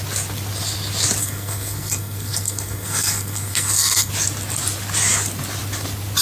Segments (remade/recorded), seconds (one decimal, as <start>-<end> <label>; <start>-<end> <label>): 0.0-1.2 recorded; 1.2-4.1 remade; 4.1-6.2 recorded

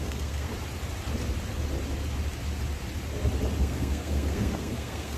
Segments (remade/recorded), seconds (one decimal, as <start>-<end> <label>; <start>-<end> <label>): 0.0-0.5 remade; 0.5-3.6 recorded; 3.6-5.2 remade